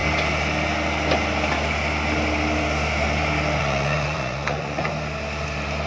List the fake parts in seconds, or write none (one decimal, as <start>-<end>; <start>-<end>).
3.6-4.9